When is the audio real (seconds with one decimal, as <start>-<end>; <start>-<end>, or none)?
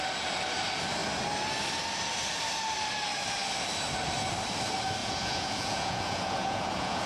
0.0-5.0